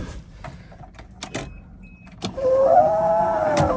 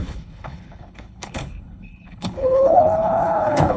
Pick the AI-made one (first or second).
second